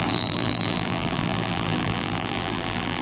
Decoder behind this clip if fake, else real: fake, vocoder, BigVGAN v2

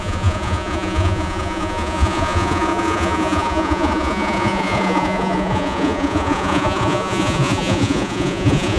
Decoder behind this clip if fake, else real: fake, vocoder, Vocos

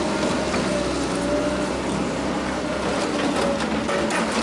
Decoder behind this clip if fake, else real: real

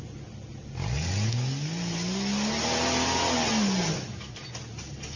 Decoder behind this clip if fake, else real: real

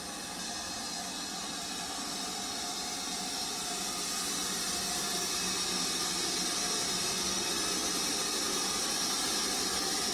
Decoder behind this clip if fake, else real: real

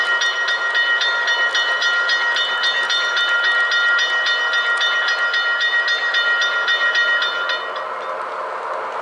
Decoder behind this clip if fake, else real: real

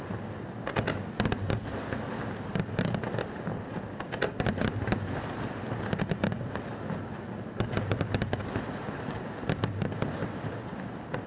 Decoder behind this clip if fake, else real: real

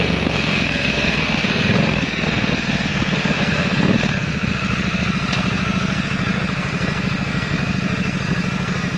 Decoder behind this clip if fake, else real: fake, codec, SNAC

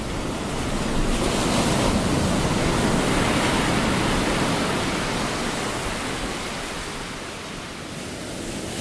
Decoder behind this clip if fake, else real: real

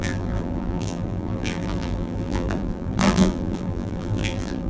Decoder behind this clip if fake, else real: fake, vocoder, BigVGAN v2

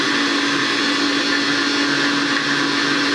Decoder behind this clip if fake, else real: real